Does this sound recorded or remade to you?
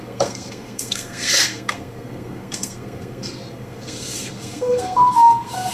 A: remade